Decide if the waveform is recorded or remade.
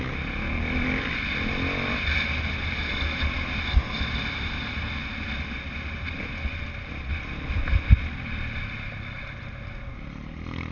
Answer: recorded